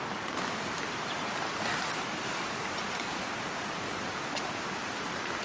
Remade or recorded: recorded